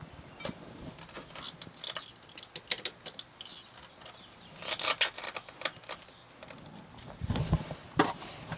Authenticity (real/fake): real